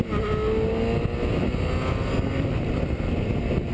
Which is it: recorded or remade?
recorded